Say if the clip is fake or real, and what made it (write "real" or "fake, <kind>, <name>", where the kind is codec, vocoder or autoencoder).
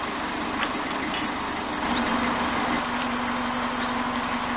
real